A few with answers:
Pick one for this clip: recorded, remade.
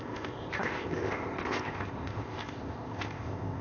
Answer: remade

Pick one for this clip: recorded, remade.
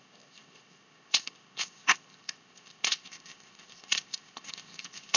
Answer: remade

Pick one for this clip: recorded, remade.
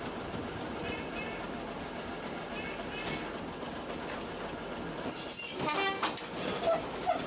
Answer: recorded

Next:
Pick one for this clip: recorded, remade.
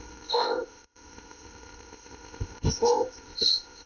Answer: remade